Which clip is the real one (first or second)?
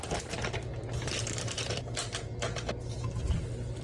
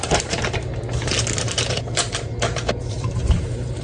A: first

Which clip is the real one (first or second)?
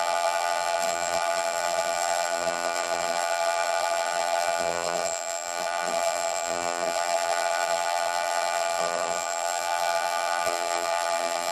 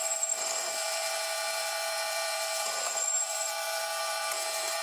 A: second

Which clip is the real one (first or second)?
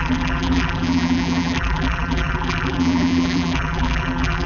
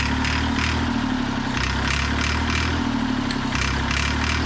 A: second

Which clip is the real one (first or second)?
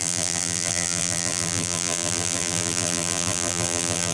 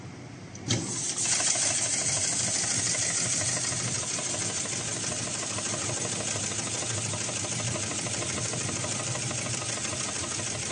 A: second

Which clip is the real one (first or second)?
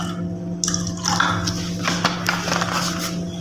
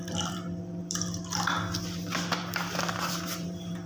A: first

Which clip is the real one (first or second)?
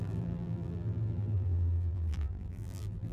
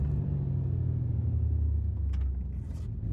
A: second